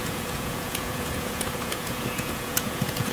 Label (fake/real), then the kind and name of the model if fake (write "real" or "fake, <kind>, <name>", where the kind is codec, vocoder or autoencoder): fake, vocoder, Vocos